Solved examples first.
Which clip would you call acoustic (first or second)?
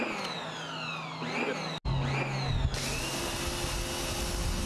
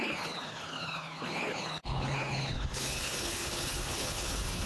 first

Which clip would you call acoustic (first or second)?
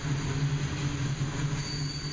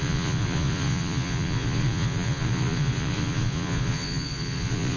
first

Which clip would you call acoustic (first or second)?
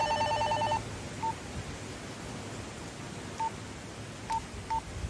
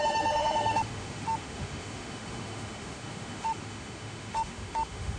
first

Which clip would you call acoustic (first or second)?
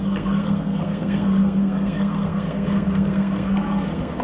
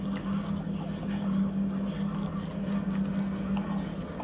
second